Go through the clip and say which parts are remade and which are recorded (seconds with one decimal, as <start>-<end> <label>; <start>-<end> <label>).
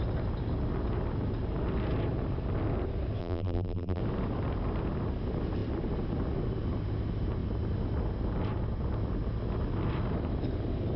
0.0-3.2 recorded; 3.2-4.0 remade; 4.0-11.0 recorded